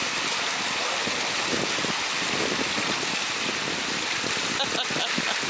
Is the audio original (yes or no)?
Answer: yes